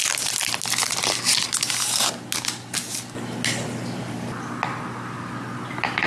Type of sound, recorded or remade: recorded